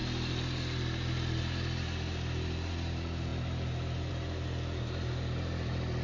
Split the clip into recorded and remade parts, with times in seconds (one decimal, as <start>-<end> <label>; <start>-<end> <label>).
0.0-6.0 recorded